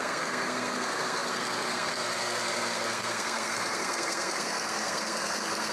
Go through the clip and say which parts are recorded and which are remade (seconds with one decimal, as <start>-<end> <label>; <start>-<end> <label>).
0.0-5.7 remade